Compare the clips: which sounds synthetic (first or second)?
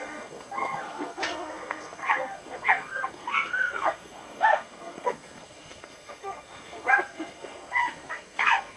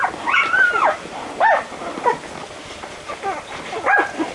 first